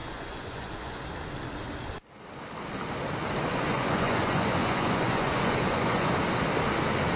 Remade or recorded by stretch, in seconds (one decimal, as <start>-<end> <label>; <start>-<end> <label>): 0.0-1.0 remade; 1.0-3.5 recorded; 3.5-6.1 remade; 6.1-7.2 recorded